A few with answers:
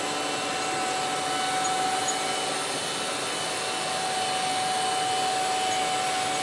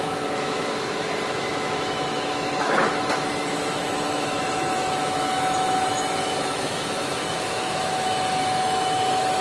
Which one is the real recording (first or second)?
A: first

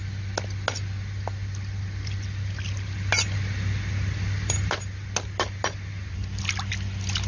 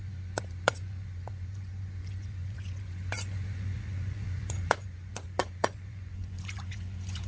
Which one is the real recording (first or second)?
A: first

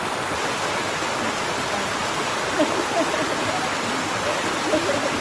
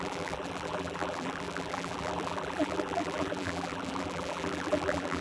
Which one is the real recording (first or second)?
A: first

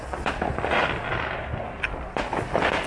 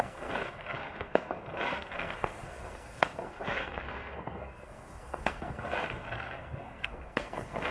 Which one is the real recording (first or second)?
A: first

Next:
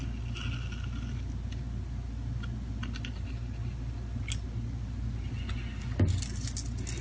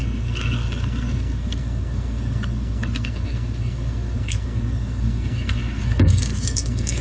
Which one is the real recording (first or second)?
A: first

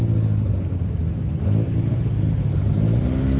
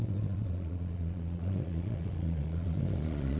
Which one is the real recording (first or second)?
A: first